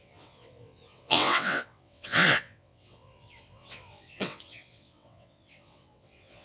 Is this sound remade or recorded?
remade